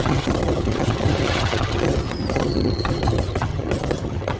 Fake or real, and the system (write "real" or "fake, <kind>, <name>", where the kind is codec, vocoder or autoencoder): fake, vocoder, HiFi-GAN